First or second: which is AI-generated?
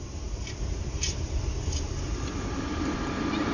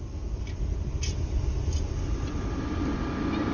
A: first